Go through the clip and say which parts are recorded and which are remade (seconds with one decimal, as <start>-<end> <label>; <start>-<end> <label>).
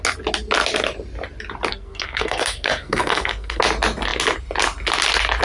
0.0-1.7 recorded; 1.7-3.6 remade; 3.6-5.4 recorded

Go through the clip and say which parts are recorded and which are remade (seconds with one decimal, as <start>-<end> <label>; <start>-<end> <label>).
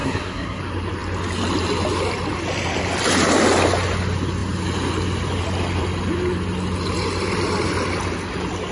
0.0-0.6 remade; 0.6-8.7 recorded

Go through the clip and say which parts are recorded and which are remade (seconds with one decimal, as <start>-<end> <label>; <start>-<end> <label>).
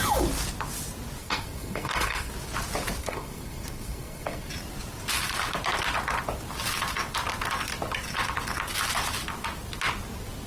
0.0-1.2 recorded; 1.2-2.3 remade; 2.3-3.0 recorded; 3.0-4.5 remade; 4.5-10.5 recorded